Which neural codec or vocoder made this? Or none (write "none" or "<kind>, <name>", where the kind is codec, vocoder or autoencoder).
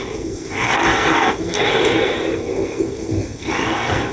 codec, SNAC